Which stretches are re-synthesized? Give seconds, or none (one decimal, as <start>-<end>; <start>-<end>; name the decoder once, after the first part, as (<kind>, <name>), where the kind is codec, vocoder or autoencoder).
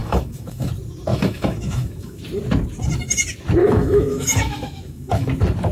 0.0-0.7 (autoencoder, DAC-VAE); 1.1-2.2; 3.6-5.3